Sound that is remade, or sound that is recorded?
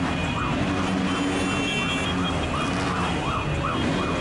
recorded